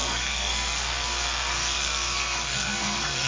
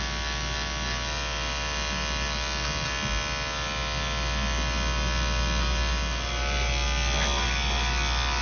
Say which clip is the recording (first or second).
second